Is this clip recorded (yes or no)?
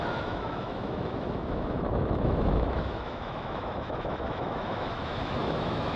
no